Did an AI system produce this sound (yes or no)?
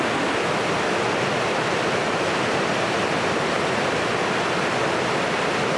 no